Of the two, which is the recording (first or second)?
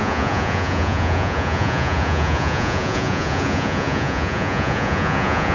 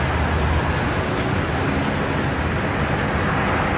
second